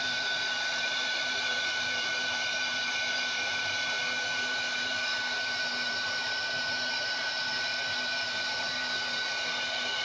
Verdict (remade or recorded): remade